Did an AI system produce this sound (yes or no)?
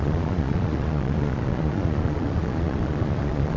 yes